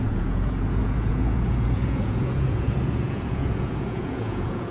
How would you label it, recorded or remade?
remade